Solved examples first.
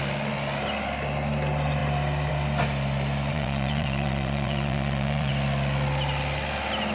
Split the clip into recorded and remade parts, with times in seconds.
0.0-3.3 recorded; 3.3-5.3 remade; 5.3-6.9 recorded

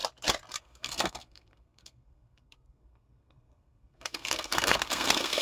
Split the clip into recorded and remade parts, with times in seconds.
0.0-0.6 recorded; 0.6-5.4 remade

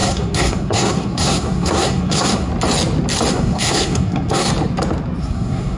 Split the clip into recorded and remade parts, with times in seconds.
0.0-2.5 remade; 2.5-3.3 recorded; 3.3-4.5 remade; 4.5-5.2 recorded; 5.2-5.8 remade